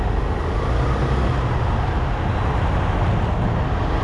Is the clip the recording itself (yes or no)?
yes